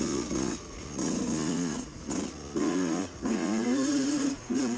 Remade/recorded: remade